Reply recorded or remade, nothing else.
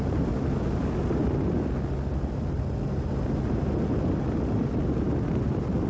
recorded